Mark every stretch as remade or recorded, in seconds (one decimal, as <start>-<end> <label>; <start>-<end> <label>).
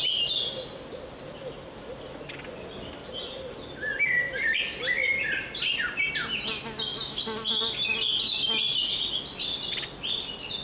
0.0-10.6 recorded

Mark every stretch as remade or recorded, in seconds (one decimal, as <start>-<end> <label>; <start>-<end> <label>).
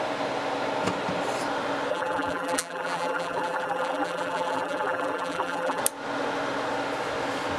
0.0-1.9 recorded; 1.9-5.8 remade; 5.8-7.6 recorded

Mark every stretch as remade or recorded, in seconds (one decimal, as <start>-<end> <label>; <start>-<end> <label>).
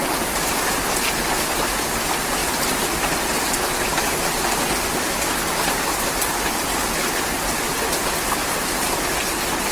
0.0-8.4 recorded; 8.4-8.9 remade; 8.9-9.7 recorded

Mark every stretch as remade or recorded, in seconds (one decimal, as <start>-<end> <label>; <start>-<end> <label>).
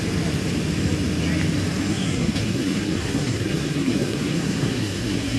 0.0-1.9 recorded; 1.9-5.4 remade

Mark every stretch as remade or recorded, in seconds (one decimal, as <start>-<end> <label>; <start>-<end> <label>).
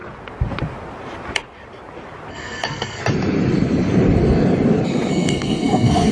0.0-2.3 recorded; 2.3-3.0 remade; 3.0-5.1 recorded; 5.1-6.1 remade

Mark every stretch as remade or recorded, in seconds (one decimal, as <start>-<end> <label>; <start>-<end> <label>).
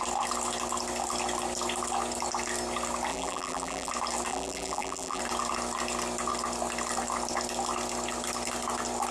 0.0-3.1 recorded; 3.1-3.9 remade; 3.9-4.3 recorded; 4.3-5.2 remade; 5.2-9.1 recorded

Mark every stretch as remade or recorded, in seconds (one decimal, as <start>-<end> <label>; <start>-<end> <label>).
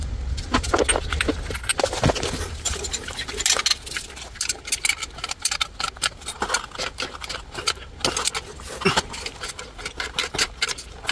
0.0-11.1 recorded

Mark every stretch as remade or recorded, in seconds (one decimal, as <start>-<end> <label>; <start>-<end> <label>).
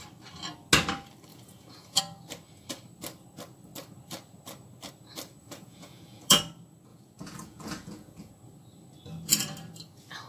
0.0-1.3 recorded; 1.3-2.0 remade; 2.0-5.4 recorded; 5.4-6.4 remade; 6.4-6.9 recorded; 6.9-8.3 remade; 8.3-10.3 recorded